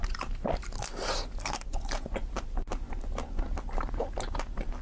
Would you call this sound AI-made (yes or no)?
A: no